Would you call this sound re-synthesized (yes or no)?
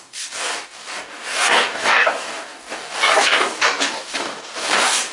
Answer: yes